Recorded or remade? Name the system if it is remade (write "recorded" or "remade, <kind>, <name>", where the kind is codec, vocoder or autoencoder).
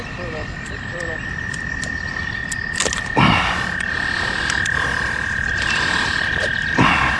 recorded